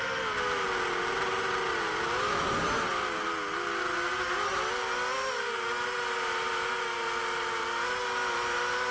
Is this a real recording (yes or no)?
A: yes